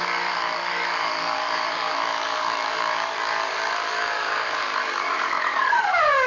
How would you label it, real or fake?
fake